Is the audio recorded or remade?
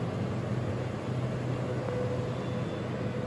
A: recorded